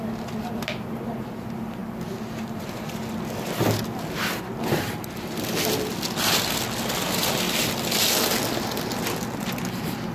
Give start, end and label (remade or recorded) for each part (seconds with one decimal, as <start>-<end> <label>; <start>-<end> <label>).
0.0-10.1 recorded